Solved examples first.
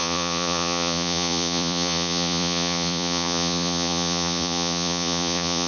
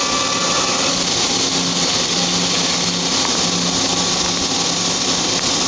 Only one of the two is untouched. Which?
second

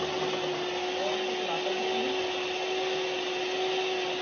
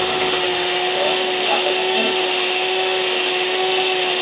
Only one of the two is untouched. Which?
first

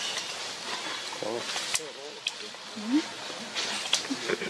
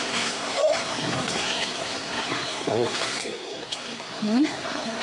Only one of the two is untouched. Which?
first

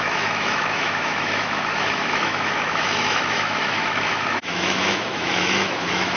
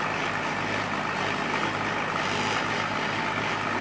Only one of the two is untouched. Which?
second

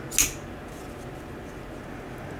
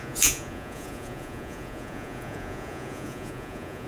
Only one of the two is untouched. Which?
first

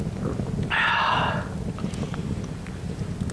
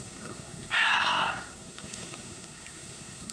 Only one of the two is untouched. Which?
first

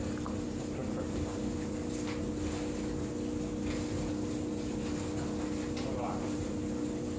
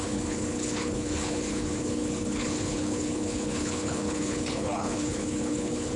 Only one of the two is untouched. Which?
first